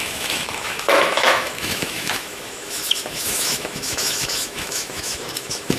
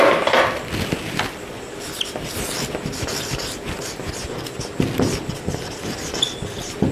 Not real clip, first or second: first